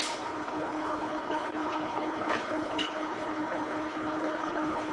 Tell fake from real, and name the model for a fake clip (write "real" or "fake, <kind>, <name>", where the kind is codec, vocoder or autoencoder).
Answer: fake, codec, HILCodec